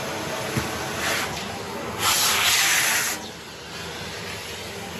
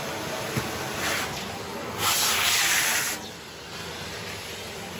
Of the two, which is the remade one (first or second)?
second